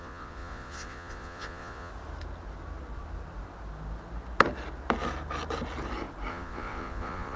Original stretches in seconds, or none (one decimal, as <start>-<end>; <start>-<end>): 1.9-6.3